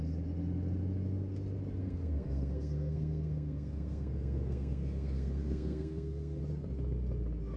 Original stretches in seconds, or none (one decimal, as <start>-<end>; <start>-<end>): 0.0-1.8; 6.4-7.6